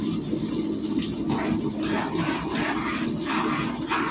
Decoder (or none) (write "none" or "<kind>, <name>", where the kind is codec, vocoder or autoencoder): none